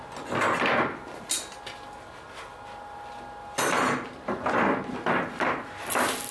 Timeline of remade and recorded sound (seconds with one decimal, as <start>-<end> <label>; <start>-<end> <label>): 0.0-6.3 recorded